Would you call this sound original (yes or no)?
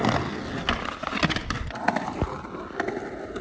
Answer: yes